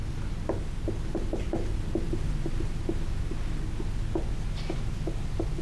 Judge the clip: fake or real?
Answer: real